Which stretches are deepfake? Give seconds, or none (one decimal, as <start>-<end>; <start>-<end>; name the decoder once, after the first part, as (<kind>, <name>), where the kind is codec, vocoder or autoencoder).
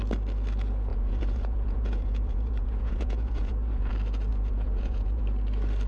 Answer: 0.9-3.9 (vocoder, Vocos); 4.3-5.2